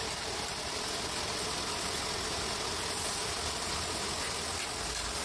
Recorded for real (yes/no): yes